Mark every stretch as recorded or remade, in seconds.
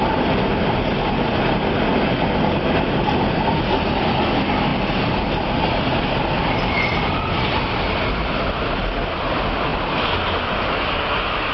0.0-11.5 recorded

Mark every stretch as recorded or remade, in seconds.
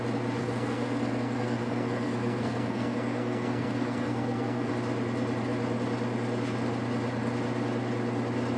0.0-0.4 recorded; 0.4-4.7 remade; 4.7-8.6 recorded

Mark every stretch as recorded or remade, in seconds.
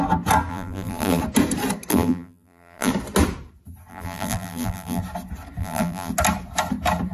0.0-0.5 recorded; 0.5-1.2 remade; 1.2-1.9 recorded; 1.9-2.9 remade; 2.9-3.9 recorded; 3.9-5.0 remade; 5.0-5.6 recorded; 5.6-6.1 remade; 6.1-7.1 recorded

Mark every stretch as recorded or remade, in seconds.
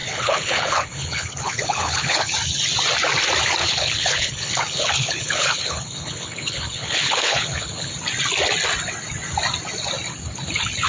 0.0-2.3 remade; 2.3-3.6 recorded; 3.6-7.9 remade; 7.9-10.9 recorded